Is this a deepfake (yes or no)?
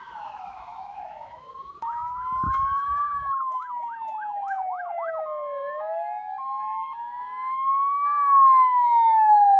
yes